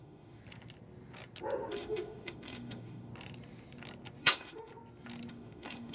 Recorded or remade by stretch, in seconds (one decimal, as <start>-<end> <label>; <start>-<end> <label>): 0.0-0.4 remade; 0.4-1.7 recorded; 1.7-3.1 remade; 3.1-4.2 recorded; 4.2-4.7 remade; 4.7-5.3 recorded; 5.3-5.9 remade